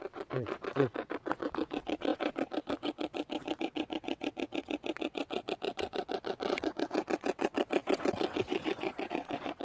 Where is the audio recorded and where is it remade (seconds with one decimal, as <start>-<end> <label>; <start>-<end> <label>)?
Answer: 0.0-9.6 remade